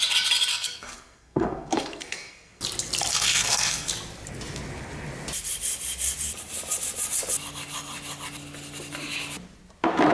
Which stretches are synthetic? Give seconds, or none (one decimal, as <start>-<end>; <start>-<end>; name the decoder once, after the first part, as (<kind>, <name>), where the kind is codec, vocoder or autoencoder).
0.5-2.6 (codec, SNAC); 3.1-3.9